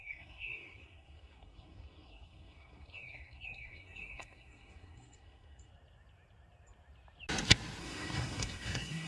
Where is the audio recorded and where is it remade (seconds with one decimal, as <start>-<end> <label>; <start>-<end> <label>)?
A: 0.0-5.7 remade; 5.7-7.8 recorded; 7.8-9.1 remade